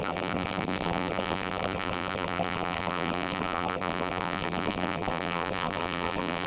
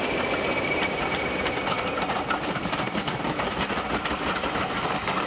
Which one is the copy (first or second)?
first